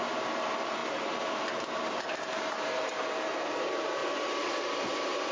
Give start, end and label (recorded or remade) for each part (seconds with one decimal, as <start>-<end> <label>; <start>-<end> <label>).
0.0-5.3 remade